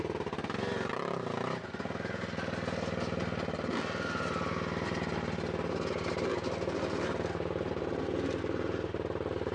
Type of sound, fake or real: real